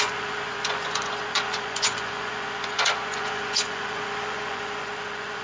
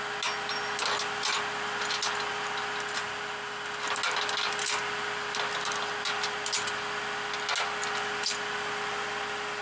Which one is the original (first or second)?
second